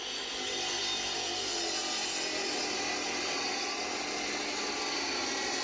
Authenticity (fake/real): real